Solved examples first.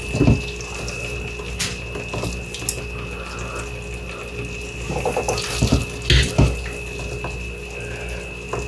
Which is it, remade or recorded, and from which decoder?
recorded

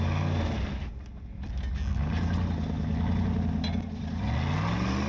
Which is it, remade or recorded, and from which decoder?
recorded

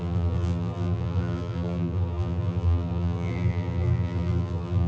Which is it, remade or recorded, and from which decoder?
remade, vocoder, BigVGAN v2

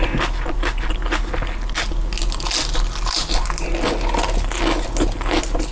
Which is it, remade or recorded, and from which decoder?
recorded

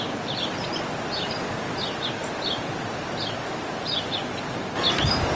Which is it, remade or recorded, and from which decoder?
recorded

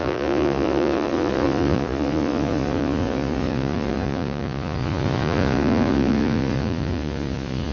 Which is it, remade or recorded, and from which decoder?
remade, vocoder, Vocos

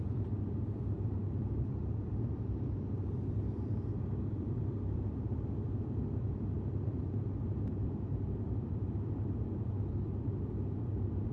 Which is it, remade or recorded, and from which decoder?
remade, vocoder, BigVGAN v2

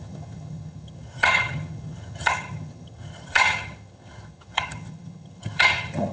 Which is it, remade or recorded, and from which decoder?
remade, vocoder, HiFi-GAN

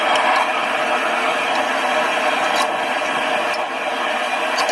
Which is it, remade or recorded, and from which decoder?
recorded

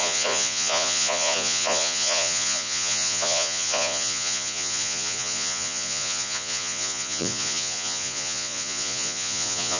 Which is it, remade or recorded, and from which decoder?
remade, vocoder, Vocos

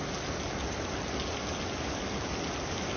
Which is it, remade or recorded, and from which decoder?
recorded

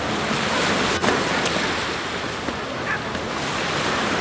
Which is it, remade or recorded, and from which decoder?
recorded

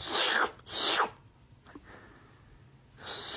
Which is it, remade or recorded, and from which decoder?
recorded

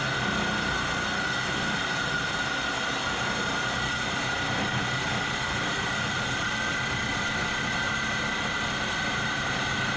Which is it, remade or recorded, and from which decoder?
recorded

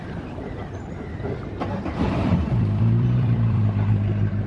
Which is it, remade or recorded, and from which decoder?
remade, vocoder, BigVGAN v2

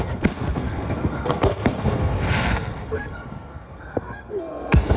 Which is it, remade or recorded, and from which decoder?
remade, codec, SNAC